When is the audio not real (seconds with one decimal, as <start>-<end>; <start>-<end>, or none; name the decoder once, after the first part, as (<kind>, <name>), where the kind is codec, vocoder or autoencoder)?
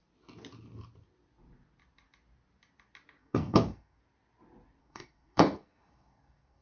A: 3.2-4.0 (codec, SNAC); 4.8-6.6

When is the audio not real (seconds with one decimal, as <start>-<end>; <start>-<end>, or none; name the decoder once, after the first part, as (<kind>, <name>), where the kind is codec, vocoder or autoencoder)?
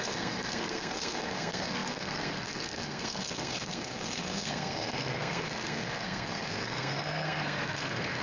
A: 0.0-8.2 (codec, SNAC)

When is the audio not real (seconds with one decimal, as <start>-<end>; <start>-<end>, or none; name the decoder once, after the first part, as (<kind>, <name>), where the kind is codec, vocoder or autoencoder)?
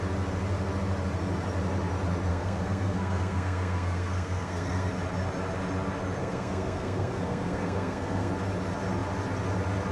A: 2.3-4.9 (codec, SNAC); 6.2-8.3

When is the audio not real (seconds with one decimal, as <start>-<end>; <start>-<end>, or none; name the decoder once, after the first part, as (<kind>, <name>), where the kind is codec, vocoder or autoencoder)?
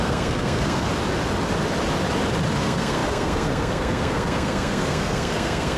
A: 0.0-0.9 (codec, SNAC); 2.6-5.8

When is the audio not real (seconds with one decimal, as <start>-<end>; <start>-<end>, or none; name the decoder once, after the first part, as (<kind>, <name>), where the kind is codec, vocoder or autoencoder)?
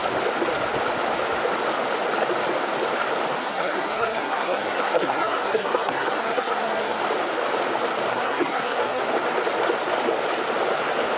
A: 3.4-7.0 (codec, SNAC); 8.1-9.0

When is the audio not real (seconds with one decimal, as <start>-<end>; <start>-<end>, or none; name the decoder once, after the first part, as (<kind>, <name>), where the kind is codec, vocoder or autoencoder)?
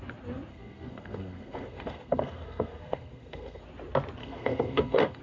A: 0.5-3.6 (codec, SNAC); 4.2-5.2